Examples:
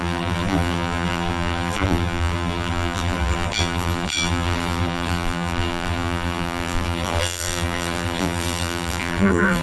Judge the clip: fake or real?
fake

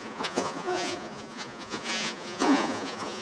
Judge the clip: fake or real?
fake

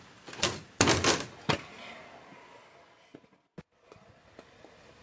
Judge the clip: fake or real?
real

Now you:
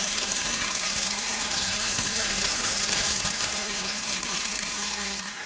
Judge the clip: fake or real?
fake